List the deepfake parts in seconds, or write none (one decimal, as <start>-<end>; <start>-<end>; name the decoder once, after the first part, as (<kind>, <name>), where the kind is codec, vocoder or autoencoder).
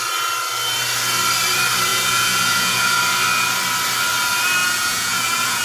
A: 1.9-3.0 (vocoder, Vocos); 4.6-5.6